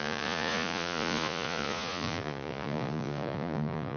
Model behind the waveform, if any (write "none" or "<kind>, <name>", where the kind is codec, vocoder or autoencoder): vocoder, Vocos